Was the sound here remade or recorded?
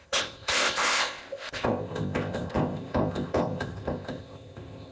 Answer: remade